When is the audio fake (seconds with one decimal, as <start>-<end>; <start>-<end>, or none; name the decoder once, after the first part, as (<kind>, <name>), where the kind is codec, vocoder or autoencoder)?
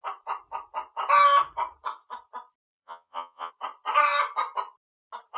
2.7-3.5 (vocoder, Vocos)